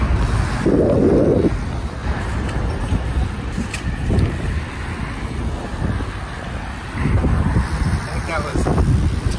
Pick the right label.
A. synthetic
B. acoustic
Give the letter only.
B